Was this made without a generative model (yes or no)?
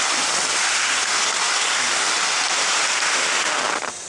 yes